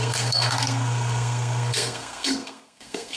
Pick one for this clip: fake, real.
fake